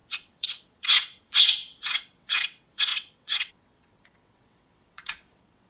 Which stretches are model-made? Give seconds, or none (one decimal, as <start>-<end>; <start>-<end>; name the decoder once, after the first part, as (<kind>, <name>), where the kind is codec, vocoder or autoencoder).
0.0-5.7 (vocoder, WaveNeXt)